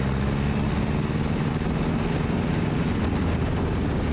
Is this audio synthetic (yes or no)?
no